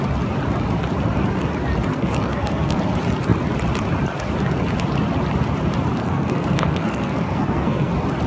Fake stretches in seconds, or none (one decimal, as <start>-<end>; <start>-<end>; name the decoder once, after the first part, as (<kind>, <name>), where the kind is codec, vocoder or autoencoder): 1.9-2.8 (codec, SNAC); 6.0-7.9